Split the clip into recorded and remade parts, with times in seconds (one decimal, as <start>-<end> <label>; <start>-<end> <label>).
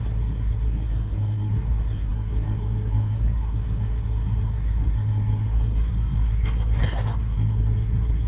0.0-8.3 remade